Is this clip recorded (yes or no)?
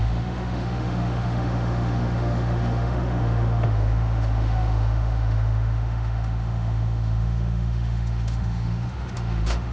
no